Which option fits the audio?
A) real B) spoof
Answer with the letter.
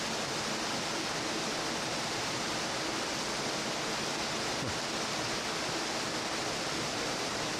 A